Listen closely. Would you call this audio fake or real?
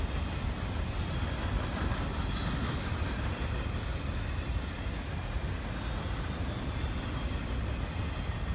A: real